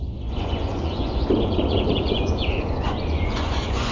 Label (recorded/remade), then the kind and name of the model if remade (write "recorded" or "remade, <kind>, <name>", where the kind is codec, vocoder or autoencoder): remade, vocoder, Vocos